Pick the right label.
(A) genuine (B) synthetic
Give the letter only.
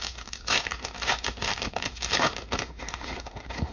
B